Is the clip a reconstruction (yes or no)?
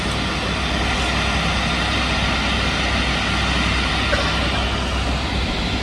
no